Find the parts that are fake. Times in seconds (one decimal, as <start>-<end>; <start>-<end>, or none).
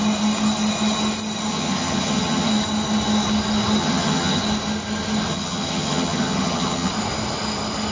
1.5-2.5; 3.8-4.4; 5.3-6.9